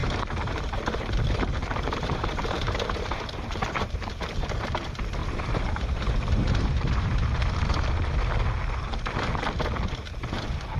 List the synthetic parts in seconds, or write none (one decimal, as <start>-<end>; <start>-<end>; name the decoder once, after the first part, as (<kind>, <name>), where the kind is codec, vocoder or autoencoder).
0.0-3.9 (vocoder, BigVGAN v2); 5.2-7.9